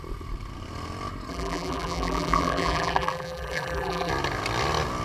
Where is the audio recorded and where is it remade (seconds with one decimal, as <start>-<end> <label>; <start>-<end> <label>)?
0.0-1.3 recorded; 1.3-4.1 remade; 4.1-5.0 recorded